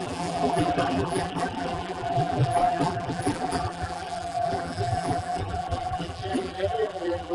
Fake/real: fake